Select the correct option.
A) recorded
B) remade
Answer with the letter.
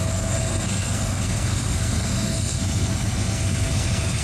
B